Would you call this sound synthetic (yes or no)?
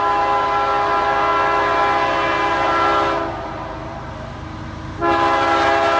no